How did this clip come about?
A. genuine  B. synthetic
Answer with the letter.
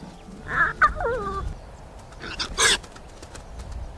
A